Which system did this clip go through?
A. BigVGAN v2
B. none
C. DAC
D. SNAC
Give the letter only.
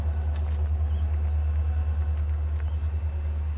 B